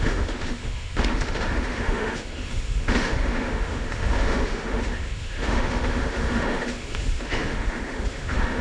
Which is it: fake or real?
fake